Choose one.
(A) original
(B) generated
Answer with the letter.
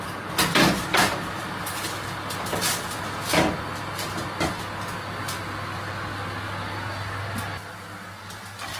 A